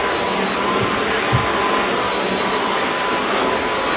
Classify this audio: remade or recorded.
recorded